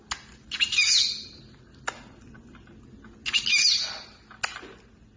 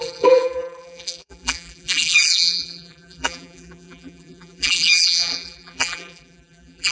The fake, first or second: second